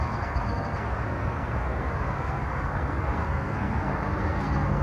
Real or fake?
fake